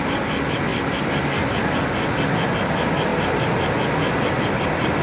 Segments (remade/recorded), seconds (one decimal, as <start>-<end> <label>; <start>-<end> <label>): 0.0-0.7 remade; 0.7-2.5 recorded; 2.5-3.1 remade; 3.1-4.6 recorded; 4.6-5.0 remade